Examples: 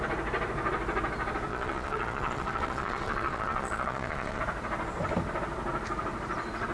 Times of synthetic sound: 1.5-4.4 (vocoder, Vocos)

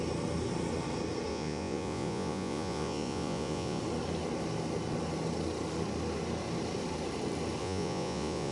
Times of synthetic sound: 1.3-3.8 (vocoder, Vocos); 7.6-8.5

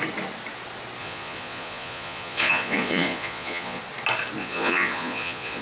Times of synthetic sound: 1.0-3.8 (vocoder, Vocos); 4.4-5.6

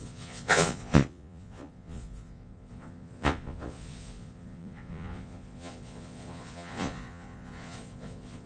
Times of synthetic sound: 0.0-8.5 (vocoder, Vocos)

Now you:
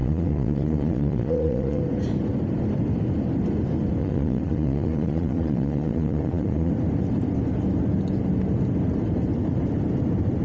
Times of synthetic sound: 0.0-1.8 (vocoder, Vocos); 4.0-6.7

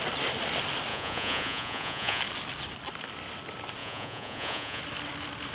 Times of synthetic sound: 0.9-2.2 (vocoder, Vocos); 3.8-4.8

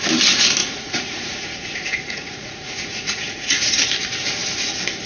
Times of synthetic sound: 0.6-3.7 (vocoder, Vocos)

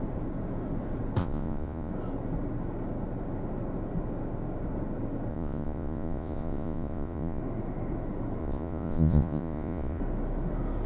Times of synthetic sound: 1.2-1.9 (vocoder, Vocos); 5.3-7.4; 8.4-10.0